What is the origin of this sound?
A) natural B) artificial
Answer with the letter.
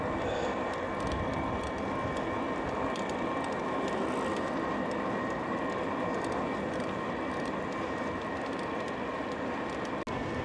A